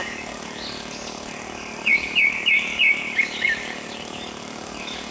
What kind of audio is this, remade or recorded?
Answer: remade